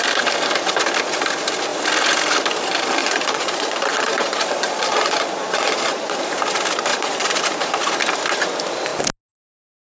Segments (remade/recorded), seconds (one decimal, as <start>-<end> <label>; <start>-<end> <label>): 0.0-3.0 recorded; 3.0-6.2 remade; 6.2-6.9 recorded; 6.9-7.4 remade; 7.4-9.8 recorded